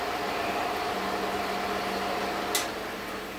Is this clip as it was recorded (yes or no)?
yes